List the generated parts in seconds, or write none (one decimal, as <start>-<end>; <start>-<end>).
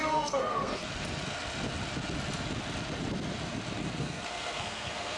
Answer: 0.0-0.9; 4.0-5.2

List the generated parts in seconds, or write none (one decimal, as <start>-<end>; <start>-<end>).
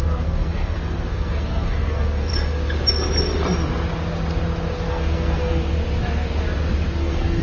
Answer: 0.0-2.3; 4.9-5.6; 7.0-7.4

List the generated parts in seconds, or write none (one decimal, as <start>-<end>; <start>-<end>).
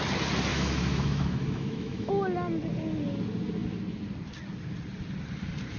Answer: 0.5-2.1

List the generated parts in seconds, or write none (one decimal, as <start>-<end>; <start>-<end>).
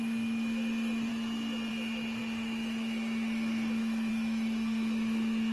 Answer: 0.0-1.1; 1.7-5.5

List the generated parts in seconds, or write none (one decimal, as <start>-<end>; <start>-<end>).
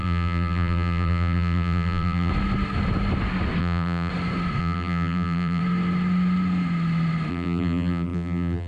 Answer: 0.0-2.3; 3.6-4.1; 4.6-5.6; 7.3-8.7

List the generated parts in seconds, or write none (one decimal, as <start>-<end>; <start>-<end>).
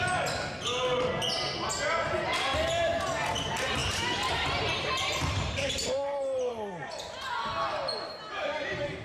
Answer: 3.8-6.5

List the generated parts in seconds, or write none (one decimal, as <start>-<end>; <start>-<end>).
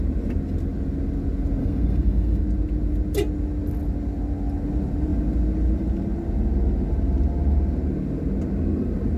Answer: 1.6-2.4